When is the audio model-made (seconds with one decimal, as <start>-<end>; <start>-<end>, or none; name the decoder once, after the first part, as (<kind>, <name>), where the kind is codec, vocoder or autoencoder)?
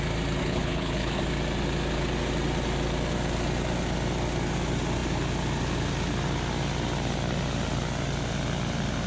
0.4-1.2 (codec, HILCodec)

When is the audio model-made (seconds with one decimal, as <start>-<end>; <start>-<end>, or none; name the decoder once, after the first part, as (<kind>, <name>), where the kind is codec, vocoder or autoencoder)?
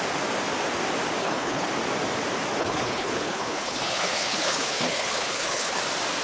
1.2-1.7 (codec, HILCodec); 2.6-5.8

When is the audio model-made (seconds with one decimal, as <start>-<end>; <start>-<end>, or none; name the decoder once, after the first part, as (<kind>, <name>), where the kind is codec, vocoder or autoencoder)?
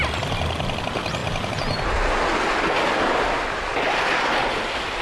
none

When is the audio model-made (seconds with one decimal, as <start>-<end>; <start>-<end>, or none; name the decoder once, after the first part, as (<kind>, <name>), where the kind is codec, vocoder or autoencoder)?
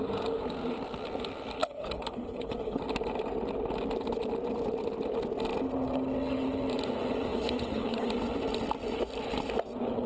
1.6-2.8 (codec, HILCodec); 7.3-8.1